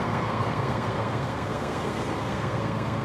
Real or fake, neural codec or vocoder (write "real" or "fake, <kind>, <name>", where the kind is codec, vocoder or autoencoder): fake, codec, SNAC